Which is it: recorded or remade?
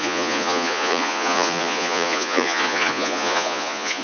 remade